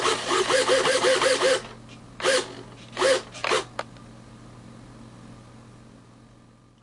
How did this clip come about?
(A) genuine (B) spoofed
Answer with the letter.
A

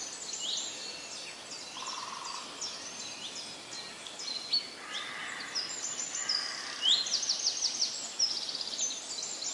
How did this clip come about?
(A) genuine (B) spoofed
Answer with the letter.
A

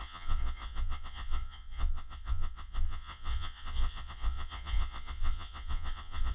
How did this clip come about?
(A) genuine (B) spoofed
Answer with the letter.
B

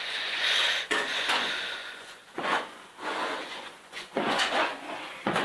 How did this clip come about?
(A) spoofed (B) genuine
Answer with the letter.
A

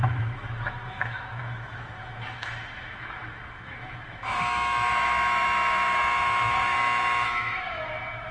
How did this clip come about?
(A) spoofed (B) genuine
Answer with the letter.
A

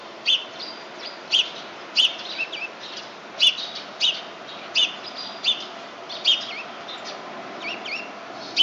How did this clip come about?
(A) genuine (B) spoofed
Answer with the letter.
A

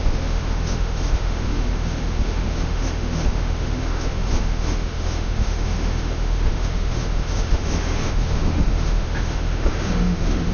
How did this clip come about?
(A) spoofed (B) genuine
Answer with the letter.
A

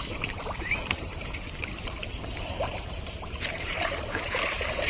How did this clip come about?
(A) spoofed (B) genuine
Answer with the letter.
A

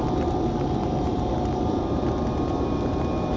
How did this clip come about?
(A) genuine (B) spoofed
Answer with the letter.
B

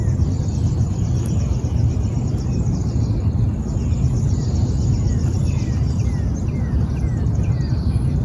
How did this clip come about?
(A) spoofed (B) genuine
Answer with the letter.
B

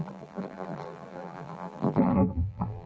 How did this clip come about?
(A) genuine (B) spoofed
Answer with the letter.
B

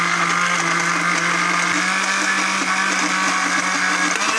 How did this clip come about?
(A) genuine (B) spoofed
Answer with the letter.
A